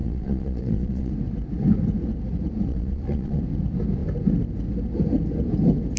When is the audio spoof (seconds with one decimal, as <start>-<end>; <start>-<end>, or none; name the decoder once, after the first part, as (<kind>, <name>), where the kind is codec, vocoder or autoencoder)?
0.0-1.1 (vocoder, Vocos); 2.7-3.4